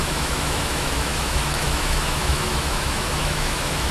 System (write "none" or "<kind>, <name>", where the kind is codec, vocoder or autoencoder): autoencoder, DAC-VAE